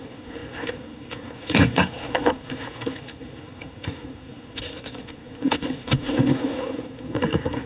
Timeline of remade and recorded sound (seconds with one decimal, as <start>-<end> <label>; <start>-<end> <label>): 0.0-7.7 remade